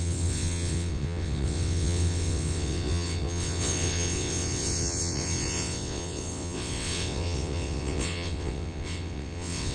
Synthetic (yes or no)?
yes